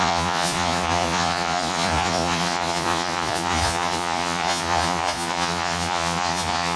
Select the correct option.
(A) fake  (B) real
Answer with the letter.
A